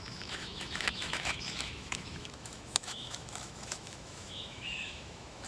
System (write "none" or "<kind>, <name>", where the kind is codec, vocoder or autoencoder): autoencoder, DAC-VAE